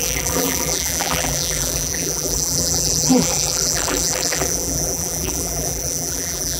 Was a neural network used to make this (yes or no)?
yes